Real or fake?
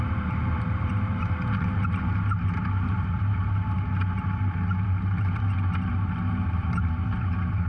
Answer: fake